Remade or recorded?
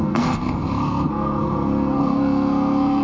remade